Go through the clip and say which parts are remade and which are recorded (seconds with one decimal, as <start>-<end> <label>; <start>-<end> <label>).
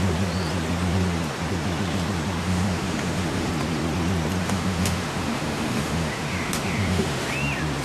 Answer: 0.0-2.4 recorded; 2.4-3.5 remade; 3.5-4.4 recorded; 4.4-7.3 remade; 7.3-7.8 recorded